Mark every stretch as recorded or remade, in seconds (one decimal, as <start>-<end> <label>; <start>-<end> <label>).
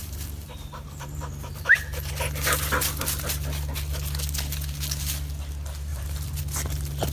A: 0.0-2.1 remade; 2.1-5.9 recorded; 5.9-6.4 remade; 6.4-7.1 recorded